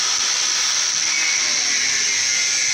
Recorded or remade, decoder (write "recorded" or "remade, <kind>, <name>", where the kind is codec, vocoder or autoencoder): recorded